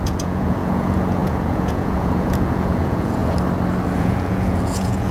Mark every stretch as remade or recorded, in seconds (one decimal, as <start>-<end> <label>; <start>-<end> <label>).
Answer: 0.0-3.2 remade; 3.2-4.0 recorded; 4.0-5.1 remade